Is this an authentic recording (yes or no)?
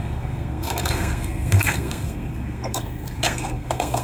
no